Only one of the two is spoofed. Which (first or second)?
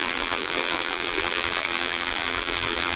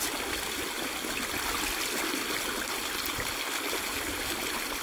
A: first